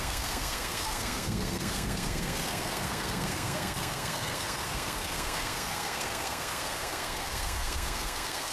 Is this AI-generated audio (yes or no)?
yes